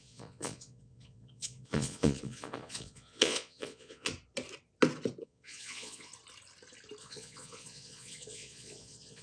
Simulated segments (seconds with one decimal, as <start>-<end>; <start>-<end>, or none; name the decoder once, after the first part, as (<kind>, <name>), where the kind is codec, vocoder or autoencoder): 0.0-4.1 (vocoder, Vocos); 5.2-6.1; 7.0-9.2